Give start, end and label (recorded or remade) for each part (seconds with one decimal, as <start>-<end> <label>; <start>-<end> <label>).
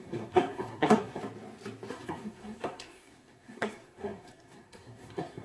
0.0-1.2 remade; 1.2-1.9 recorded; 1.9-5.4 remade